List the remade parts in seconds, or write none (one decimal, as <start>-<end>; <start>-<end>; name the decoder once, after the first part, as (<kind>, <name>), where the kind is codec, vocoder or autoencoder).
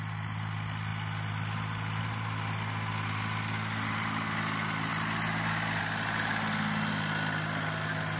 none